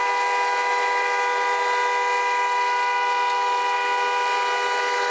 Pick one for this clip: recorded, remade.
recorded